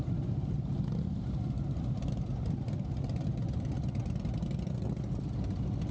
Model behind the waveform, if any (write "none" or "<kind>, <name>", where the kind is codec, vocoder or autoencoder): none